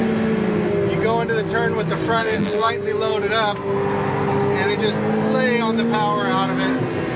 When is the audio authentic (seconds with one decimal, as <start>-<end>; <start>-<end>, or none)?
0.0-2.2; 2.7-7.2